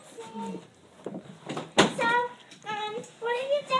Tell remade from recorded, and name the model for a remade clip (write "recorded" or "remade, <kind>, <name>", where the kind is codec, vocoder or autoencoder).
recorded